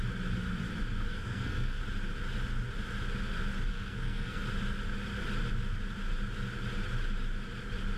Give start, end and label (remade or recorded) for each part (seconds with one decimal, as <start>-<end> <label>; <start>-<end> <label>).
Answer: 0.0-1.1 recorded; 1.1-1.8 remade; 1.8-3.7 recorded; 3.7-4.5 remade; 4.5-8.0 recorded